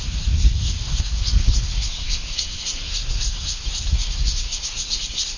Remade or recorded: remade